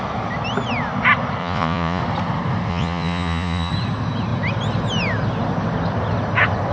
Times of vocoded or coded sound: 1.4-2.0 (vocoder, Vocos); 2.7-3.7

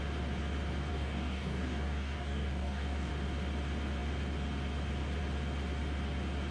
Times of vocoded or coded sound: 0.9-3.1 (codec, DAC)

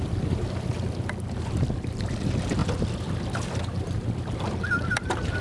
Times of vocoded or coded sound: none